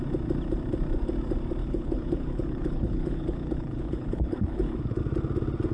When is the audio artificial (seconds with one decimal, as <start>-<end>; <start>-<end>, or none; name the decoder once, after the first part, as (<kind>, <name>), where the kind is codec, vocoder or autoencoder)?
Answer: 1.6-5.0 (codec, HILCodec)